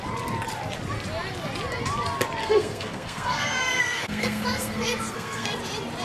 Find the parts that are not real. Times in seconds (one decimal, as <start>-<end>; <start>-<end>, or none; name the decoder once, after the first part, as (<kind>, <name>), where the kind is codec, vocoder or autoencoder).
2.4-5.6 (codec, SNAC)